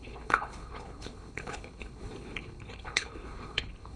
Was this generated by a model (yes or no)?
yes